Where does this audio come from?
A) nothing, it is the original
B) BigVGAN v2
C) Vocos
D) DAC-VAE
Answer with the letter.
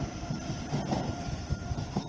B